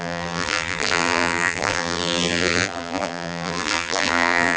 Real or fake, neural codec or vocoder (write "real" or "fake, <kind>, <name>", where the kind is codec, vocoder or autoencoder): fake, vocoder, BigVGAN v2